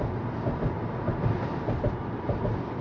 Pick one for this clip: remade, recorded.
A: recorded